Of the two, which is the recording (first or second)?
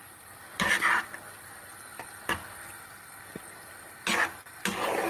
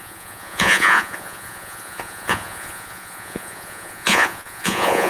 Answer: first